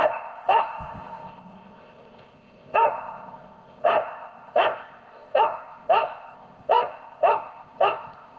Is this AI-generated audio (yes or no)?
yes